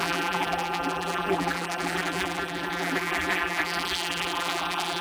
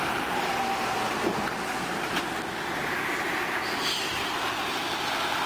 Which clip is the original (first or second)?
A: second